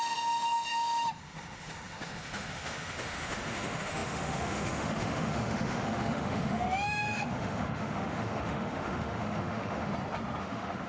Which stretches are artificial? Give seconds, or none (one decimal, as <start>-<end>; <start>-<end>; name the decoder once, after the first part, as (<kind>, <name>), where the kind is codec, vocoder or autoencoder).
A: 0.0-9.9 (autoencoder, DAC-VAE); 10.4-10.9